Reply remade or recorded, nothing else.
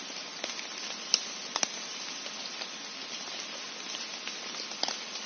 recorded